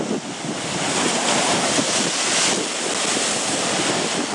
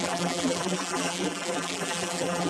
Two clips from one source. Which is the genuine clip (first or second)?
first